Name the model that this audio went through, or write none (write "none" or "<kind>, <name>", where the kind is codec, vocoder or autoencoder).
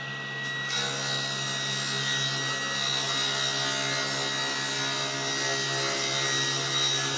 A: none